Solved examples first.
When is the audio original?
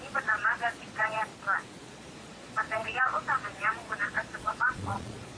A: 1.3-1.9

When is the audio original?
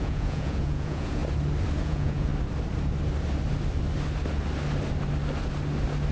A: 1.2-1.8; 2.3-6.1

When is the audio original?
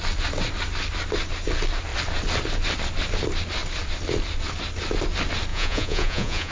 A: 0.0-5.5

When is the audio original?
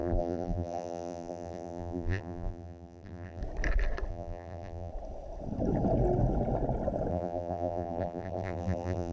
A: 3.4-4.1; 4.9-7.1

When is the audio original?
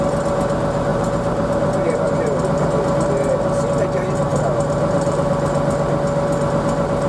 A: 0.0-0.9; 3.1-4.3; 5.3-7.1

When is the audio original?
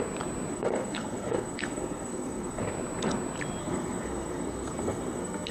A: 0.0-0.5; 2.6-3.6